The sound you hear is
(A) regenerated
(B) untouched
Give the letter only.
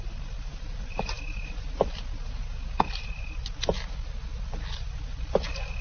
B